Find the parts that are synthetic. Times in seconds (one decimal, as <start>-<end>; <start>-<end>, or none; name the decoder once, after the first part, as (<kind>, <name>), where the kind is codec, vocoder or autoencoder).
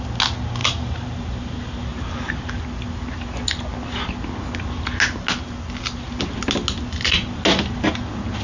0.6-1.2 (vocoder, BigVGAN v2); 1.9-2.6